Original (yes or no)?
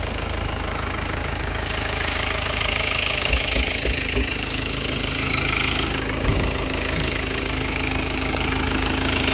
no